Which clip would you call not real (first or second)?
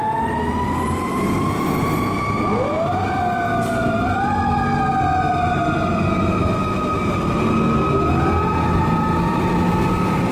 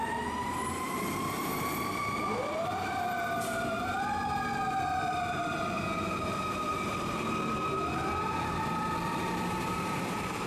second